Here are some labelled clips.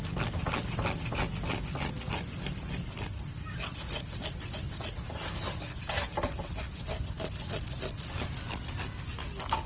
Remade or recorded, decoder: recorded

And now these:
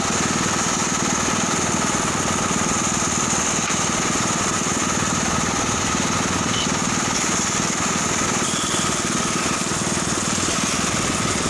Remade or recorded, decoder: recorded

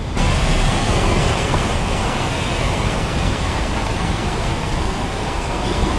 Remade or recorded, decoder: remade, codec, SNAC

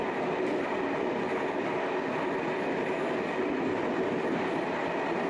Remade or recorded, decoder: recorded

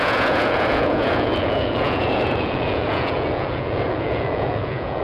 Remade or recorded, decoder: remade, vocoder, Vocos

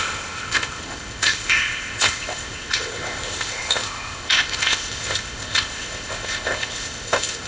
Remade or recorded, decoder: remade, codec, ZipCodec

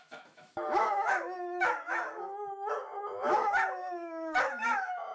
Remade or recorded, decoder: remade, autoencoder, DAC-VAE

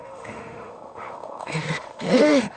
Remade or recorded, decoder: remade, autoencoder, DAC-VAE